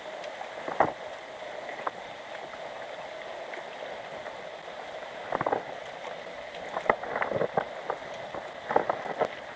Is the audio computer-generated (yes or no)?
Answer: no